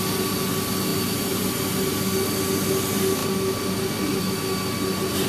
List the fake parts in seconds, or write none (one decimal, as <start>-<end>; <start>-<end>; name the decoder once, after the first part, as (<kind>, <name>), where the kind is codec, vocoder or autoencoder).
0.9-1.5 (vocoder, BigVGAN v2)